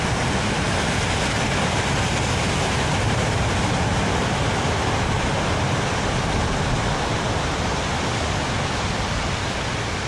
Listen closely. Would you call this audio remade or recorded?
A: recorded